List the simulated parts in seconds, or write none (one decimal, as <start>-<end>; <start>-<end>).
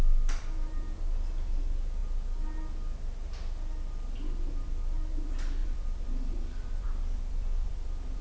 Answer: 5.6-8.2